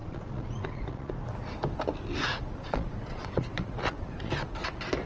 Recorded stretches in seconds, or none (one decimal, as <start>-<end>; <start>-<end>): 1.1-2.3; 4.3-5.1

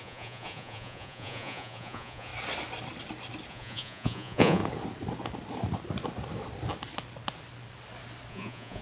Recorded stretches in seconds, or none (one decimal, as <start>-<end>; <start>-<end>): 2.3-3.5; 4.6-8.3

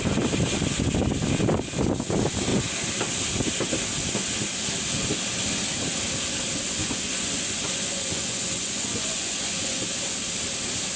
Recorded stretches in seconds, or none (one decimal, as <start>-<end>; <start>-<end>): 0.0-6.8; 9.8-11.0

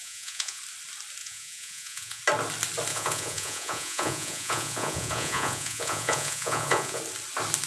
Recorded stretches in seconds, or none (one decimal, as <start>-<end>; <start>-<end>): 0.6-1.2; 2.2-2.9; 7.0-7.7

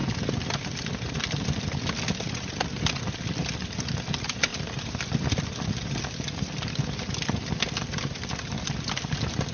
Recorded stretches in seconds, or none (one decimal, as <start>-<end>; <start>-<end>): 0.0-9.5

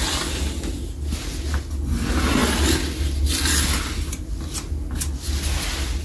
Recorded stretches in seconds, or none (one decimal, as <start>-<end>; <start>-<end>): 0.0-6.0